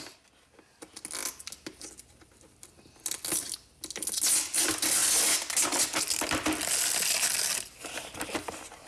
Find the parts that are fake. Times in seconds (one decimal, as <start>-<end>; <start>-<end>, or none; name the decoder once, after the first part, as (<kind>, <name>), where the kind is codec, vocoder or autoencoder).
none